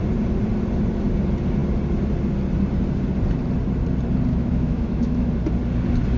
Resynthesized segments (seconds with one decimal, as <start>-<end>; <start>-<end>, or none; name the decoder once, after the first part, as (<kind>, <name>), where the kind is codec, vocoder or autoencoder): 4.3-5.3 (autoencoder, DAC-VAE)